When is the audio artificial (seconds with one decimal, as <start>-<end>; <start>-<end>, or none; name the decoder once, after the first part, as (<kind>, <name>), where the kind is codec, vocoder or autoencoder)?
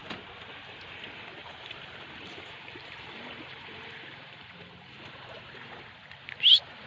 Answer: 1.4-5.5 (vocoder, BigVGAN v2)